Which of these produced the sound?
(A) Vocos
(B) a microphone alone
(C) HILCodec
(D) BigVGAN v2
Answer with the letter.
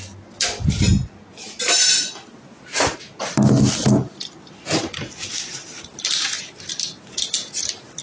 B